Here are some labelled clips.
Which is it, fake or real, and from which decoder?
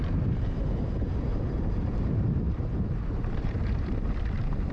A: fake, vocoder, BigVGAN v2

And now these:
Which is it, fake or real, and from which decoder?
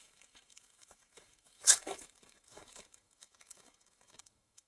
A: fake, autoencoder, DAC-VAE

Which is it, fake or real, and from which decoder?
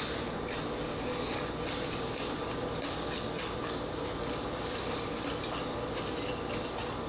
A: real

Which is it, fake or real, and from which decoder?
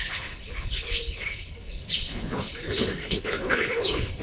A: fake, codec, HILCodec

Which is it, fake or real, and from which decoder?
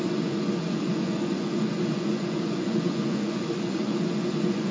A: fake, vocoder, Vocos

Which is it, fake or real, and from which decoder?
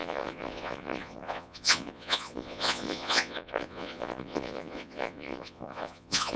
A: fake, vocoder, Vocos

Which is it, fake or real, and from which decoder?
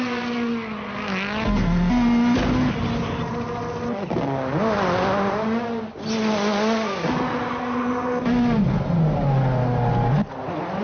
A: real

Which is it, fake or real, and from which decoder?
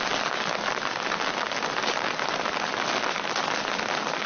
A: real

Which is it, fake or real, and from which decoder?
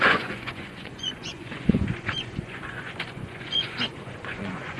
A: fake, vocoder, Vocos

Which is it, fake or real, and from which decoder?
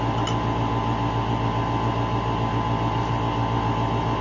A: real